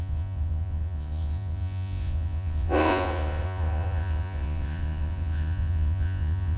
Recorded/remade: remade